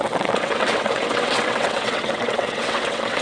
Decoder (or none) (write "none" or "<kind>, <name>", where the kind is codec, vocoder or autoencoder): vocoder, WaveNeXt